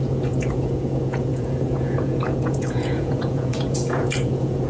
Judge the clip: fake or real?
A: fake